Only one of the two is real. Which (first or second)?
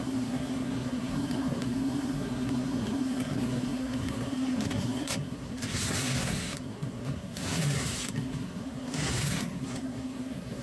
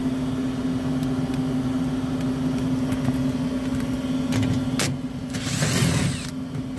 second